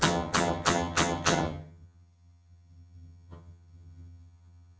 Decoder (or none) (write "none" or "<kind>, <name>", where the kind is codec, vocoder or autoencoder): vocoder, HiFi-GAN